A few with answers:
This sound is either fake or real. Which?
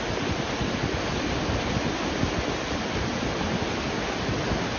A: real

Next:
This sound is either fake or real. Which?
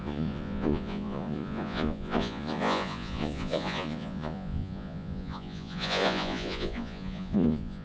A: fake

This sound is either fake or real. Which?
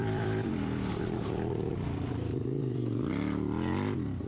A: fake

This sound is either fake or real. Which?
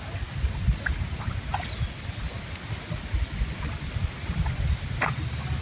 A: real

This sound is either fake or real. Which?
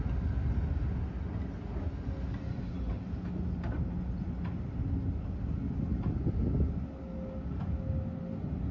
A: real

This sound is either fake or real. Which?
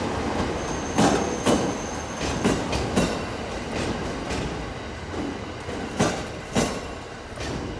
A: real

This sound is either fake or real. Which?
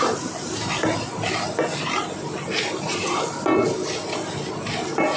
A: real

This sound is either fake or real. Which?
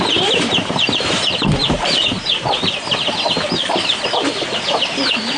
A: fake